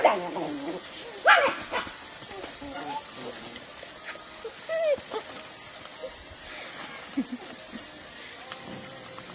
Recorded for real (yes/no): yes